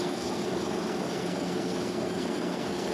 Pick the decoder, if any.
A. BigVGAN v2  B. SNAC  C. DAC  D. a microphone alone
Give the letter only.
B